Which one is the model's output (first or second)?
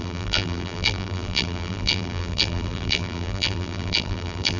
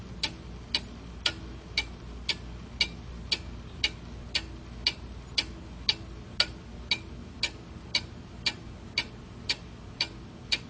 first